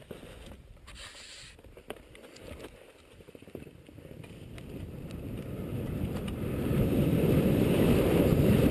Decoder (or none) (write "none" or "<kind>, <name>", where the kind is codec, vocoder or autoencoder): none